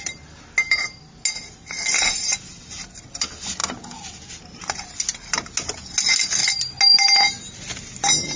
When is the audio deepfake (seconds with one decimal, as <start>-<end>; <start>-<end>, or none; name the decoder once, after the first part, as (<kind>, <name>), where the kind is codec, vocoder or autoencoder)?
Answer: none